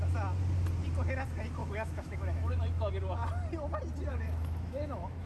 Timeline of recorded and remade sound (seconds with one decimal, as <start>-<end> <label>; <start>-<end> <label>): 0.0-1.6 recorded; 1.6-2.9 remade; 2.9-4.1 recorded; 4.1-5.3 remade